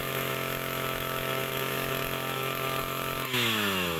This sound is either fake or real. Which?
fake